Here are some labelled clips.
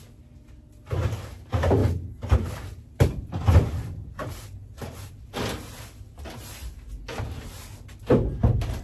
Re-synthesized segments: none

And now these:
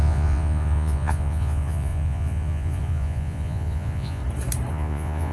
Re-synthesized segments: 0.0-4.2 (vocoder, Vocos); 4.7-5.3

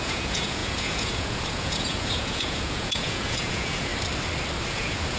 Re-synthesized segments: 0.0-3.9 (vocoder, Vocos); 4.7-5.2

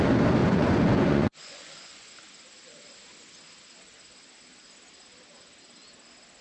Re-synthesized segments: 0.4-2.1 (vocoder, Vocos)